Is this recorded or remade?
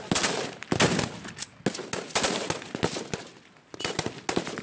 recorded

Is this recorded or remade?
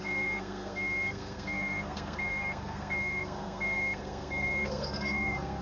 remade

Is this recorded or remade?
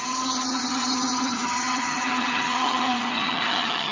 remade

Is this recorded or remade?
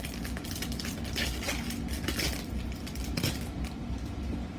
recorded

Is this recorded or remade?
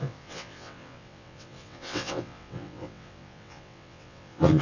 remade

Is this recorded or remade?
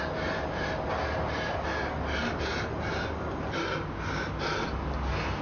recorded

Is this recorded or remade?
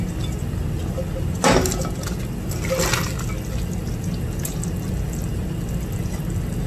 recorded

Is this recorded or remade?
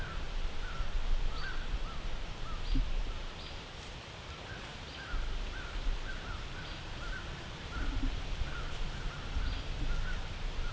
remade